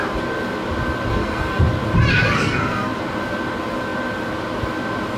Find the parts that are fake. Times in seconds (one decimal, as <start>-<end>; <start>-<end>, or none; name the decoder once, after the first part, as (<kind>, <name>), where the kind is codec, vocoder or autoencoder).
1.1-1.6 (codec, SNAC); 2.1-2.9